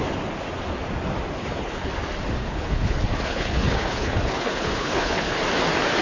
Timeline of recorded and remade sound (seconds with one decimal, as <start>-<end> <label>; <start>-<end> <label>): 0.0-1.4 recorded; 1.4-1.9 remade; 1.9-2.4 recorded; 2.4-5.4 remade; 5.4-6.0 recorded